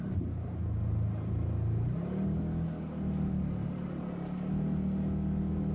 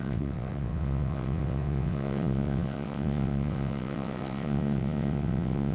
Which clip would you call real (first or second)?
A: first